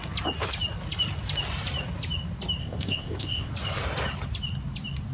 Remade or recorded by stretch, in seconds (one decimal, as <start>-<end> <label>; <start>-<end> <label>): 0.0-2.6 recorded; 2.6-3.5 remade; 3.5-5.1 recorded